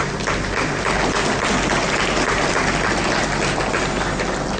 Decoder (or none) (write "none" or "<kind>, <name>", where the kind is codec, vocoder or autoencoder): none